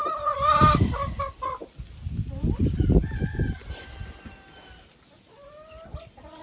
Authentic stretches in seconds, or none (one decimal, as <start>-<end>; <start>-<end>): 0.6-6.4